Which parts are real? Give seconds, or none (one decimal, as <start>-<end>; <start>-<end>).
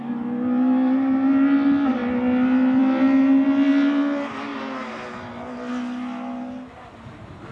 0.0-7.5